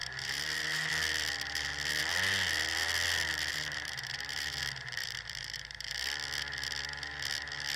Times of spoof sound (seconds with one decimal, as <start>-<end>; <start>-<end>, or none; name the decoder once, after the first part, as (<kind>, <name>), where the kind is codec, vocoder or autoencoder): 0.0-0.9 (vocoder, BigVGAN v2); 3.5-4.6; 5.0-5.9